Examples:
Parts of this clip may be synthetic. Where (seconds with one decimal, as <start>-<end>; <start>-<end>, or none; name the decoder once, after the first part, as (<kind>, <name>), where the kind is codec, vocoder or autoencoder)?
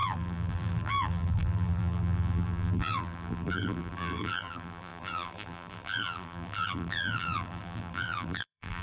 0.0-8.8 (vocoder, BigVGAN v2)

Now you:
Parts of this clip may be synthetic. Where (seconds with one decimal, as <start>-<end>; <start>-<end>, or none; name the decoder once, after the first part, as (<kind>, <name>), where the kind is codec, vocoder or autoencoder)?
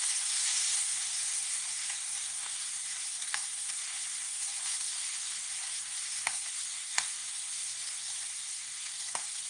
0.0-9.5 (codec, SNAC)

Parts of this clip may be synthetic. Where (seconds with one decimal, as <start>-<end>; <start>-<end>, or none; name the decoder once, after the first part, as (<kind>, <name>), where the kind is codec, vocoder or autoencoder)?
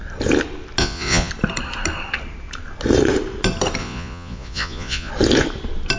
0.8-1.3 (vocoder, Vocos); 3.8-5.1